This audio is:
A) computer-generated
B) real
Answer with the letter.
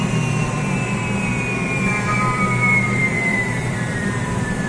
A